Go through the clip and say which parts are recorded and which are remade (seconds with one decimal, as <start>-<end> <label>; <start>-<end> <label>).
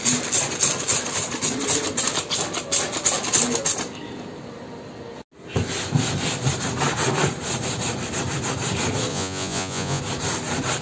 0.0-9.1 recorded; 9.1-10.0 remade; 10.0-10.8 recorded